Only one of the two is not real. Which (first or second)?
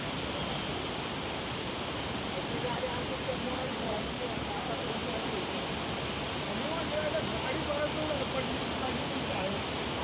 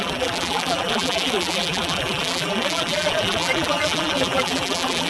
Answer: second